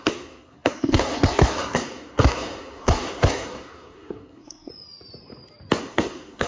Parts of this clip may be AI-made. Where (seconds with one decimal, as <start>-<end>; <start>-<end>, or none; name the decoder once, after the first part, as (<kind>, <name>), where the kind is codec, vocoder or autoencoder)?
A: 0.0-4.7 (codec, SNAC); 5.8-6.5